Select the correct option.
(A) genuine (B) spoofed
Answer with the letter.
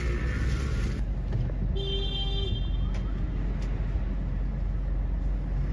A